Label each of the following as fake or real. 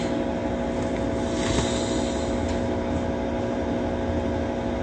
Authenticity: real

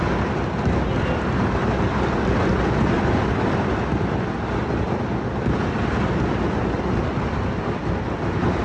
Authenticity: real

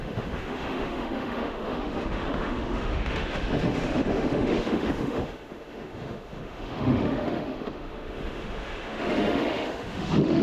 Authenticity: fake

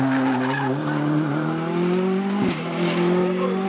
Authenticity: real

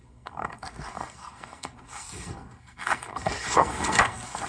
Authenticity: fake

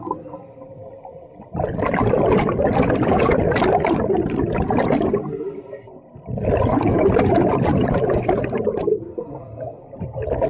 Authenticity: real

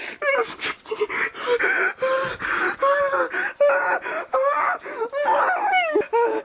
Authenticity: real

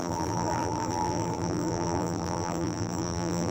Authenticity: fake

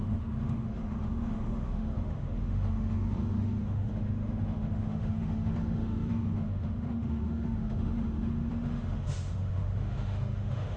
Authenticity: fake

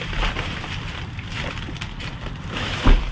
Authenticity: fake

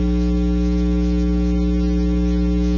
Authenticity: real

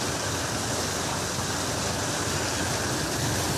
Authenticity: real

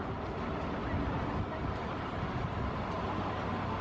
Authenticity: real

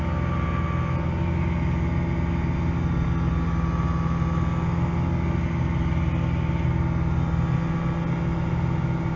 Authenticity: real